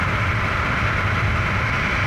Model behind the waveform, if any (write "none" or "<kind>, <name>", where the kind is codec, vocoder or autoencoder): none